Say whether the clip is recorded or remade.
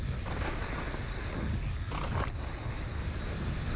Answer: recorded